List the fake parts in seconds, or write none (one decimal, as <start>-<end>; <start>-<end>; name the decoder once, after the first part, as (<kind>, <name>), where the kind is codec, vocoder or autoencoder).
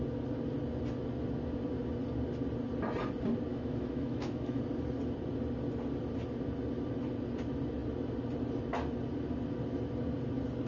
3.5-4.6 (autoencoder, DAC-VAE)